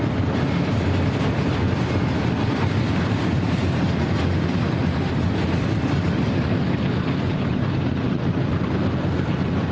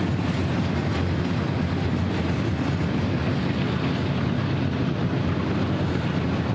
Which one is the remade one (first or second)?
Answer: first